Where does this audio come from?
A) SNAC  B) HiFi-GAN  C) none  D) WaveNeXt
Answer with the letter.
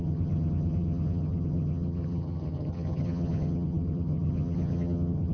B